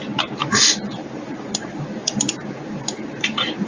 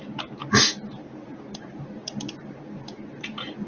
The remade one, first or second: first